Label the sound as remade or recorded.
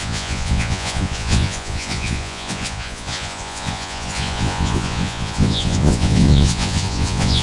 remade